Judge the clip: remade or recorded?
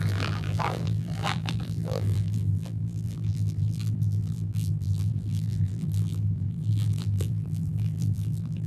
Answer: remade